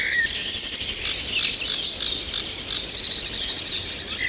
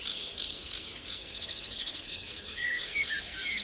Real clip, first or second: first